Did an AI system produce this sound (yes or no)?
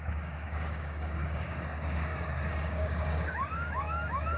yes